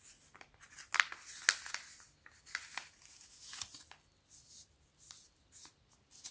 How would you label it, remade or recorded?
recorded